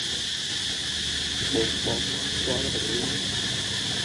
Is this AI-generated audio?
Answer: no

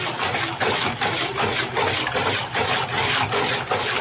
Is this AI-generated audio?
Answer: no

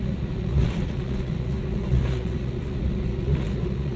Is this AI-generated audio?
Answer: yes